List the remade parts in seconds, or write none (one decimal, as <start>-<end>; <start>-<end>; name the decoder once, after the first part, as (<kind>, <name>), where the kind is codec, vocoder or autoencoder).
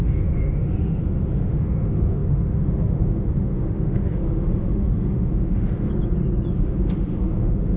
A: 0.0-5.9 (autoencoder, DAC-VAE); 6.5-7.8